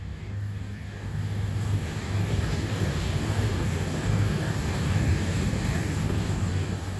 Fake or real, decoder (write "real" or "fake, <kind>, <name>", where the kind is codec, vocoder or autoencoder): fake, codec, DAC